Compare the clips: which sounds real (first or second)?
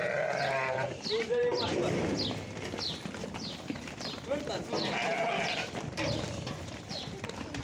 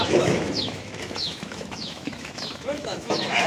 first